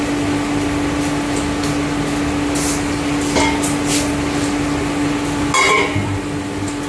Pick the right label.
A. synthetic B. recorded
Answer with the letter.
B